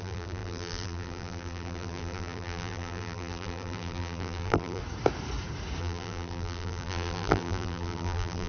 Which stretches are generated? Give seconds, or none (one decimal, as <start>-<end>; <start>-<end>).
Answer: 0.0-4.8; 5.8-8.5